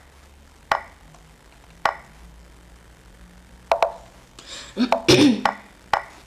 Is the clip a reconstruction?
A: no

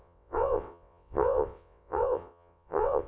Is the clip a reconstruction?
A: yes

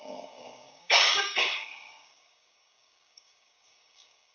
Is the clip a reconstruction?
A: yes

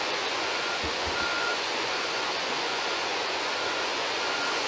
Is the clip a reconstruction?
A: yes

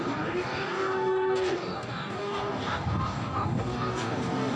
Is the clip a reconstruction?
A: yes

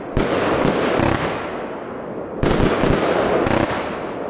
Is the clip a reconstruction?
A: no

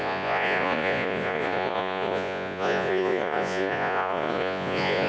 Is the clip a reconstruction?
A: yes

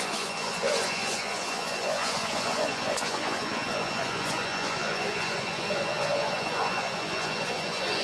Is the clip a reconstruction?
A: yes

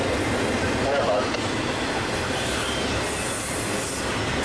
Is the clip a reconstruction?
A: no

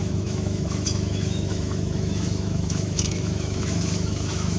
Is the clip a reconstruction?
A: yes